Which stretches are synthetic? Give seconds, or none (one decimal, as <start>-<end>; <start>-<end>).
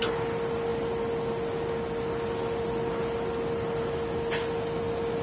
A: none